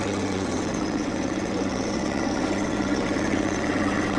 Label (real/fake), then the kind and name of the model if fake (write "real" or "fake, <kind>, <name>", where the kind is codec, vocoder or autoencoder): fake, vocoder, WaveNeXt